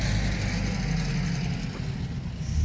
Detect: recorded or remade recorded